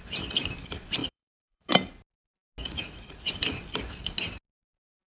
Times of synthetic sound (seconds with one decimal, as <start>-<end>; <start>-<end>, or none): 1.0-1.7; 2.6-3.3